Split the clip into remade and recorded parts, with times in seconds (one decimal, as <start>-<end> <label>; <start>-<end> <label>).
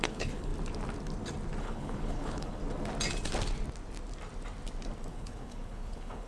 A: 0.0-0.5 remade; 0.5-1.6 recorded; 1.6-2.6 remade; 2.6-5.1 recorded; 5.1-6.3 remade